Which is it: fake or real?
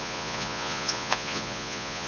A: fake